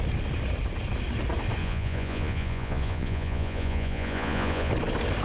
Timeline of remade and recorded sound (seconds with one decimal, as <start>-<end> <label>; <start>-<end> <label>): 0.0-1.6 recorded; 1.6-4.7 remade; 4.7-5.2 recorded